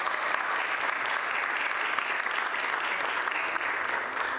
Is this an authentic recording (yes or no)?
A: yes